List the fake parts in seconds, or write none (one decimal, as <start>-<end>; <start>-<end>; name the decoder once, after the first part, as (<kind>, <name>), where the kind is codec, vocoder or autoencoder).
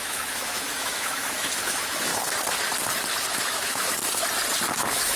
0.0-2.1 (autoencoder, DAC-VAE); 3.3-4.0; 4.8-5.2